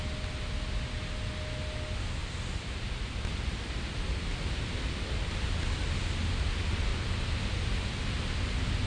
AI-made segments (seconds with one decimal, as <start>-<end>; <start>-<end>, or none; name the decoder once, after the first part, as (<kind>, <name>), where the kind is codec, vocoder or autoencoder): none